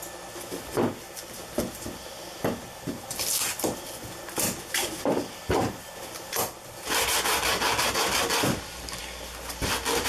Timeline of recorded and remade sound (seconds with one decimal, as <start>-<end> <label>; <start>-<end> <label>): 0.0-10.1 recorded